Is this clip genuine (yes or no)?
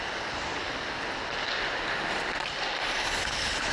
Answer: yes